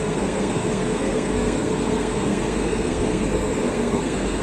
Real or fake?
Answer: fake